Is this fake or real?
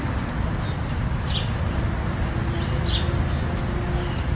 real